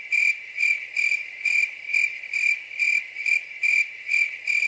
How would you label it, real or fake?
real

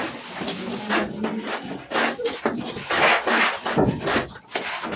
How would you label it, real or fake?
real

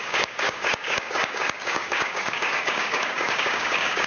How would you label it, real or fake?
fake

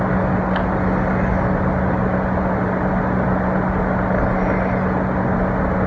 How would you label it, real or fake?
real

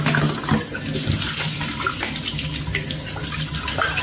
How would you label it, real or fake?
real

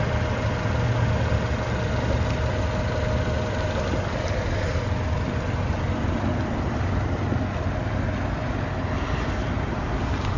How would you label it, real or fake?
real